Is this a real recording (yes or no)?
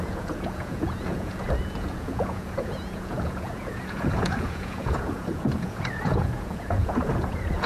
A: no